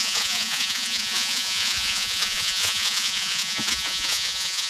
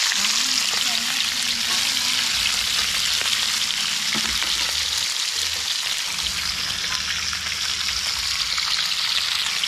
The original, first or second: second